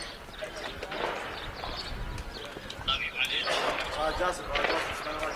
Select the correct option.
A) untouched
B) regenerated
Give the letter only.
A